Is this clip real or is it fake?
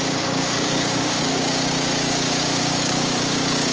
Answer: fake